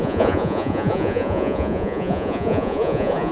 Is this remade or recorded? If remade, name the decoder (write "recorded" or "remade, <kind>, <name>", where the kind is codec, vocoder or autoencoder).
remade, vocoder, Vocos